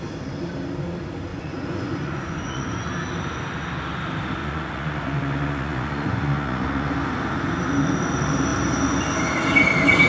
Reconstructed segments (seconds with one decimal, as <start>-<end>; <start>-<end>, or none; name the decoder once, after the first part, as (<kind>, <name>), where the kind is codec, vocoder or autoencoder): 1.3-2.9 (vocoder, Vocos); 4.4-6.9